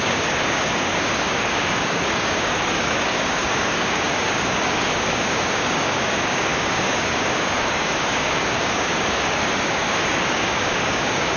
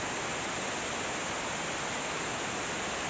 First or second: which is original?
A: second